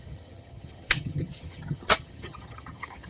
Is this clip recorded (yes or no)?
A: no